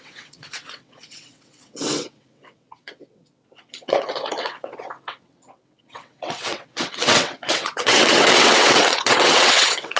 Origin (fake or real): fake